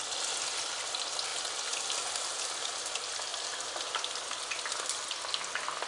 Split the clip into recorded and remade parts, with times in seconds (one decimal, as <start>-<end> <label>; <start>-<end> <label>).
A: 0.0-5.9 recorded